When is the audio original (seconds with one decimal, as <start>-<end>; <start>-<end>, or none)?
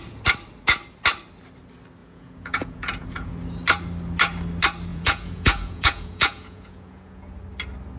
0.0-2.0; 3.3-4.9; 7.4-8.0